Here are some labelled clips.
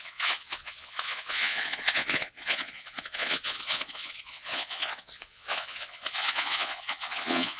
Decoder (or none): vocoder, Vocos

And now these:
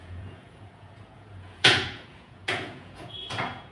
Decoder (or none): vocoder, Vocos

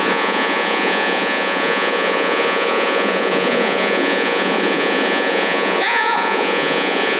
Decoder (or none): vocoder, Vocos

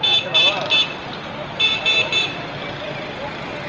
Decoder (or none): none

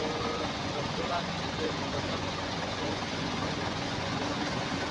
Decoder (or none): vocoder, Vocos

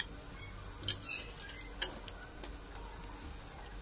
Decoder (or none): none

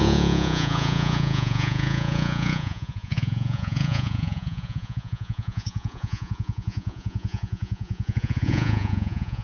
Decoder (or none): vocoder, Vocos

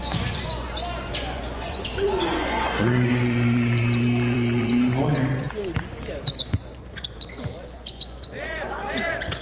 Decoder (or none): vocoder, Vocos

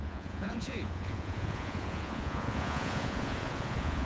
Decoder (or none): vocoder, Vocos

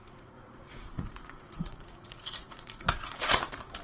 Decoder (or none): vocoder, Vocos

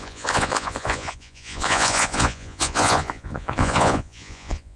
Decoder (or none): vocoder, Vocos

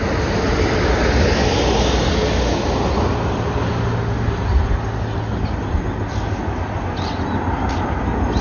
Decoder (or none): none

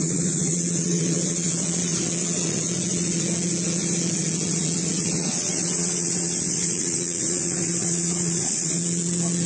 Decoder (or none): vocoder, Vocos